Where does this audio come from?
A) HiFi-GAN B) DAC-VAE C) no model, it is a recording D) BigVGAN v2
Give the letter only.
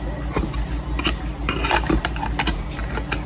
C